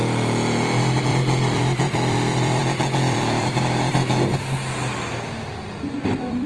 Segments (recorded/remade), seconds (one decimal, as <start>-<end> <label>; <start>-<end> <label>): 0.0-1.1 recorded; 1.1-3.9 remade; 3.9-6.5 recorded